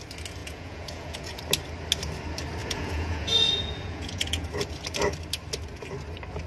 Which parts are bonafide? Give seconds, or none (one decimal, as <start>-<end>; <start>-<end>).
0.0-0.4; 1.4-2.6; 4.5-6.5